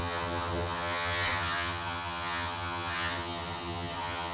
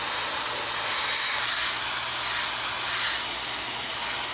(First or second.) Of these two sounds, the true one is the second